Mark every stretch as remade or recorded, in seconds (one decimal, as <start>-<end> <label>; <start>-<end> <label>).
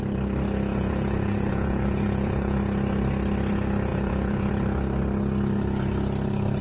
0.0-0.7 recorded; 0.7-2.6 remade; 2.6-3.9 recorded; 3.9-4.5 remade; 4.5-6.6 recorded